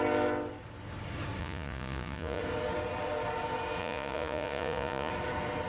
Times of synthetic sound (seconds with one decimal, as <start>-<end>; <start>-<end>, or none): 1.4-2.4; 3.8-5.1